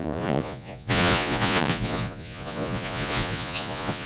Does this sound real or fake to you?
fake